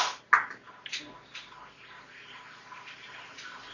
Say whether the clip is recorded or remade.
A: recorded